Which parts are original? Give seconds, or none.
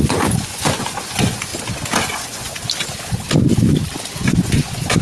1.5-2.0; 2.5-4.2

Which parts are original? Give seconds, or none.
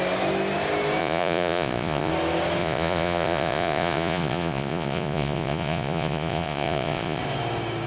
0.0-1.0; 2.1-2.6; 7.2-7.9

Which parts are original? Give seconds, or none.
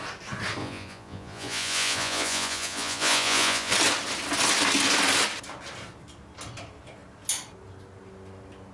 0.0-0.6; 3.7-8.7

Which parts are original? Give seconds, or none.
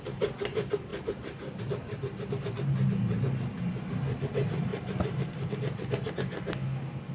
0.0-7.1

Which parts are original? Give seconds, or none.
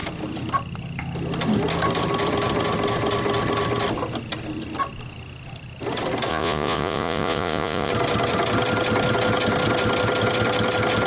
0.0-6.3; 7.9-11.1